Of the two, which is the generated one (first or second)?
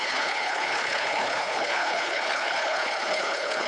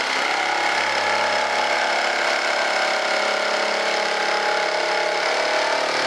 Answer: first